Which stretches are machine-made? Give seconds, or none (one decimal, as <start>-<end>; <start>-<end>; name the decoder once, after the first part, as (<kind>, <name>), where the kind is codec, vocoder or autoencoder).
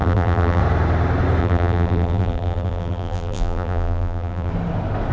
0.0-0.6 (vocoder, BigVGAN v2); 1.4-4.5